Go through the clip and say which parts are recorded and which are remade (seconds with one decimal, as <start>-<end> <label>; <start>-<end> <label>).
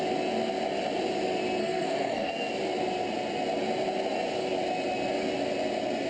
0.0-1.6 recorded; 1.6-2.3 remade; 2.3-6.1 recorded